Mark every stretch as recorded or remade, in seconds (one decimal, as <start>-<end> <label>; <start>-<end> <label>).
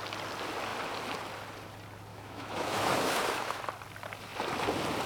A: 0.0-2.1 recorded; 2.1-3.6 remade; 3.6-5.1 recorded